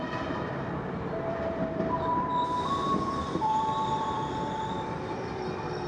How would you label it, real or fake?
fake